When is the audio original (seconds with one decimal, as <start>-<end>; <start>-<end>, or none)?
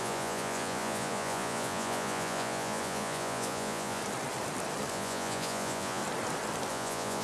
4.0-4.9; 6.0-6.7